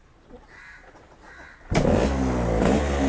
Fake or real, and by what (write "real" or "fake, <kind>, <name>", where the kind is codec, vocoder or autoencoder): real